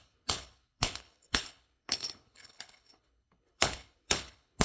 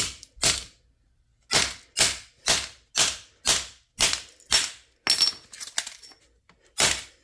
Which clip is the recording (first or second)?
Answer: second